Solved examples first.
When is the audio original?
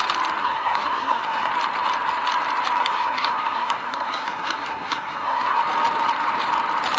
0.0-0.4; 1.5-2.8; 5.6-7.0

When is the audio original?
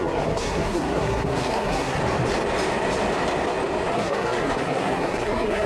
2.0-3.9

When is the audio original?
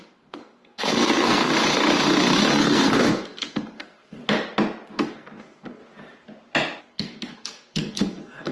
1.5-2.6; 4.2-4.9; 5.8-6.8